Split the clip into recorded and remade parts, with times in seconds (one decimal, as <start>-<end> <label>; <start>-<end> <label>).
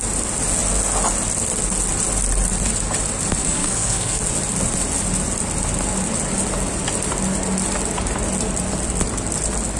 0.0-3.4 recorded; 3.4-4.2 remade; 4.2-9.8 recorded